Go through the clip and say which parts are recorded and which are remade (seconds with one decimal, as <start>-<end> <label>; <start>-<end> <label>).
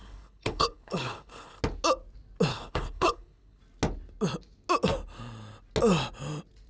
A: 0.0-1.6 remade; 1.6-2.5 recorded; 2.5-3.6 remade; 3.6-6.7 recorded